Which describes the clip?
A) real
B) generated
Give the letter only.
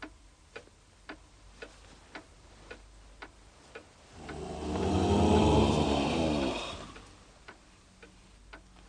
A